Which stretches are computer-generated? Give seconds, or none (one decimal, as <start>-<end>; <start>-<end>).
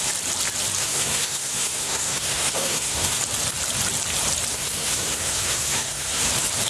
0.8-3.2; 4.5-6.3